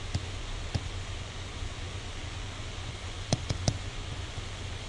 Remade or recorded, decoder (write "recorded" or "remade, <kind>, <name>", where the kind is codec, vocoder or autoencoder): remade, vocoder, Vocos